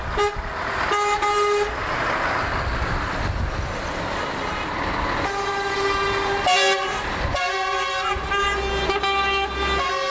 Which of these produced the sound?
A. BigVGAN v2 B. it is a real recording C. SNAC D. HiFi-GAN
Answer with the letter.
B